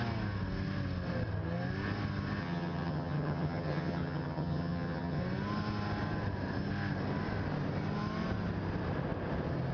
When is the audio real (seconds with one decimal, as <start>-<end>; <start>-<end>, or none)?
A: 0.0-2.4; 5.2-9.7